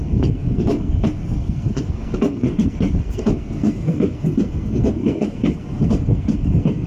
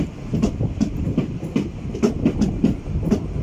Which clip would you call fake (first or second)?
first